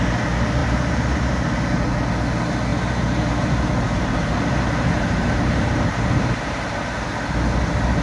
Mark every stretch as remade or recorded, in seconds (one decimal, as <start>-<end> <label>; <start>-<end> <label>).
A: 0.0-0.6 recorded; 0.6-1.9 remade; 1.9-2.7 recorded; 2.7-7.1 remade; 7.1-8.0 recorded